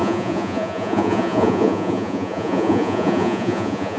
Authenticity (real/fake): fake